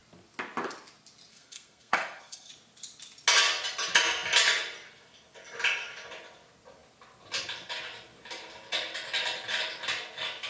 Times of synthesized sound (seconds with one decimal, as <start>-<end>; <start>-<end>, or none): 1.3-2.5